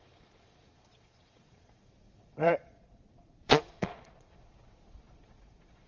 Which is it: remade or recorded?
remade